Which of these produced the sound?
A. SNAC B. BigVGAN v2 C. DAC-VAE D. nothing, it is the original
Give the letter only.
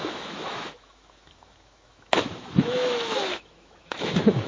C